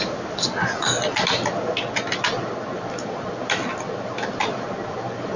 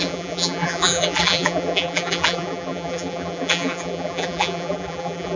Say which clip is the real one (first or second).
first